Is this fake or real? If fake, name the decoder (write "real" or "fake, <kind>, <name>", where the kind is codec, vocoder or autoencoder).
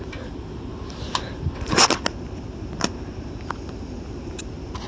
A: real